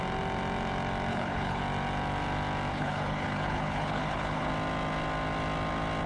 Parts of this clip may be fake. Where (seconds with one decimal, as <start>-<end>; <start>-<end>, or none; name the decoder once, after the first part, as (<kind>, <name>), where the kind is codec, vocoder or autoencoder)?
1.1-1.6 (codec, HILCodec); 2.7-4.5